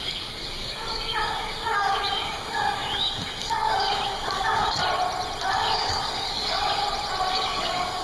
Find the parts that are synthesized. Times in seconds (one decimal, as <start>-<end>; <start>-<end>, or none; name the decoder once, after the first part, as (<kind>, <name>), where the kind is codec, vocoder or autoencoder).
0.0-4.8 (codec, DAC); 5.5-6.8; 7.3-8.0